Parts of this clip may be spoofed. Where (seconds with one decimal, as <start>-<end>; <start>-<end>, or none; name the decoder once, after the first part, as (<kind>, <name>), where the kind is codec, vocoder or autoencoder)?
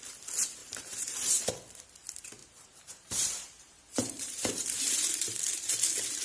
0.6-1.5 (vocoder, BigVGAN v2); 2.4-5.7